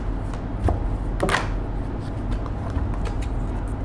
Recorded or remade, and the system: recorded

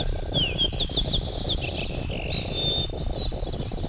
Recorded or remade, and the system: remade, vocoder, BigVGAN v2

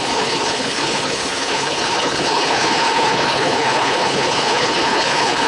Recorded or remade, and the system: remade, codec, HILCodec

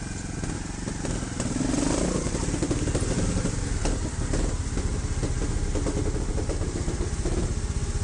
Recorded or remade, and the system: recorded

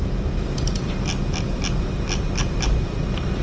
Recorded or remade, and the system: recorded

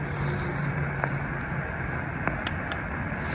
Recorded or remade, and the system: recorded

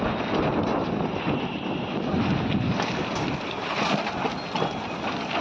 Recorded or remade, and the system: recorded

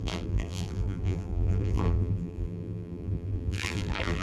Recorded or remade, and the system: remade, vocoder, BigVGAN v2